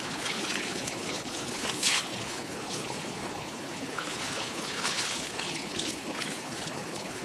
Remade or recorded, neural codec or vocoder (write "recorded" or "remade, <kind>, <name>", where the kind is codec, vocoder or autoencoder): remade, codec, HILCodec